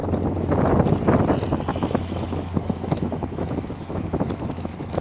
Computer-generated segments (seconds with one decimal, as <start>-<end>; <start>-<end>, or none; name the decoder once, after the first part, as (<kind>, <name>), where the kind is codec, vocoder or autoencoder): 1.7-5.0 (autoencoder, DAC-VAE)